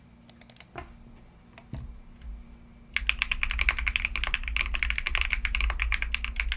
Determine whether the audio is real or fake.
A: real